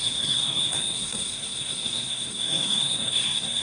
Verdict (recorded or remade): remade